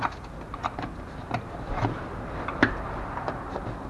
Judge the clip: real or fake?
real